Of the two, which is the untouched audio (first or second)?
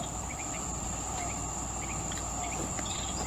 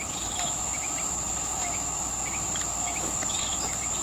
first